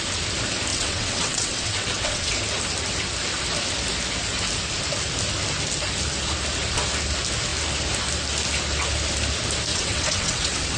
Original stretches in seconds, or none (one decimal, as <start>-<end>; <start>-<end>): 0.0-0.7; 2.3-9.7